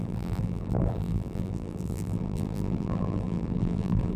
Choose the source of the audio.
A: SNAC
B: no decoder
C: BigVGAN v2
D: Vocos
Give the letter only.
C